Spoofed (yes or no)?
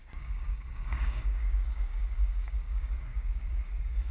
yes